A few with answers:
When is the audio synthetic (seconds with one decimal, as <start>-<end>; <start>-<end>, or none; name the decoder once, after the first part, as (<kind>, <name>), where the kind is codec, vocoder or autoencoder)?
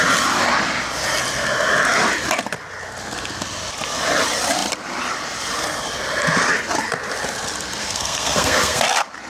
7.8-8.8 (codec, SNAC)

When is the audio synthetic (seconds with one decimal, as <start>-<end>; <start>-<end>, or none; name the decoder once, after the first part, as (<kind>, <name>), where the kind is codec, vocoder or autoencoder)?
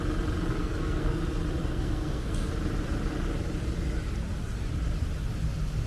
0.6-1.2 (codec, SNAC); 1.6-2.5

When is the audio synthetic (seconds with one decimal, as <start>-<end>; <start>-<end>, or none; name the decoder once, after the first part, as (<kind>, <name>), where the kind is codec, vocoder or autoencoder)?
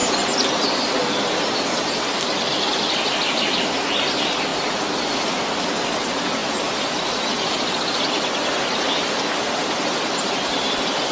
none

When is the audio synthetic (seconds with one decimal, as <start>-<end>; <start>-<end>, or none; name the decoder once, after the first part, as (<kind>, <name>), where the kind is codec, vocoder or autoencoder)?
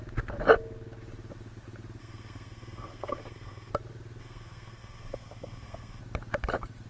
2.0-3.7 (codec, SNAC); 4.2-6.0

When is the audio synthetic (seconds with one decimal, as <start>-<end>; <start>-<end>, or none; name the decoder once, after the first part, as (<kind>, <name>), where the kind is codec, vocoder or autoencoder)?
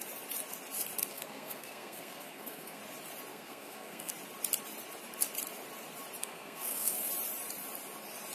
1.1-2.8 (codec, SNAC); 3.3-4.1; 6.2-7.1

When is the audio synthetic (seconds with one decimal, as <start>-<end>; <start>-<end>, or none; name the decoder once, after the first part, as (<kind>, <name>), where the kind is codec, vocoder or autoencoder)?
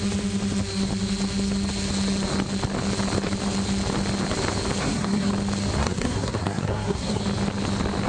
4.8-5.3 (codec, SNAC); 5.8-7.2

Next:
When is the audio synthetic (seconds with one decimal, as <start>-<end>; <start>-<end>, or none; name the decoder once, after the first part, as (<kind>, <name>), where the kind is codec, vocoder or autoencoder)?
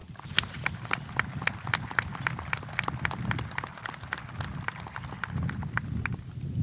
none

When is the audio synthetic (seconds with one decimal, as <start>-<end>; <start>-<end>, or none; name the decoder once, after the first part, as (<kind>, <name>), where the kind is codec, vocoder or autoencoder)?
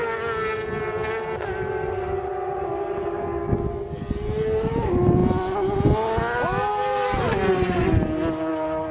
none